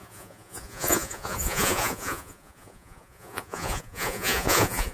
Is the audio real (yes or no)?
no